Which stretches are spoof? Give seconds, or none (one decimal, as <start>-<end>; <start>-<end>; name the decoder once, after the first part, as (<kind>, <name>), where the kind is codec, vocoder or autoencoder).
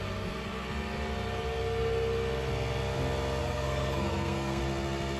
3.4-4.6 (codec, SNAC)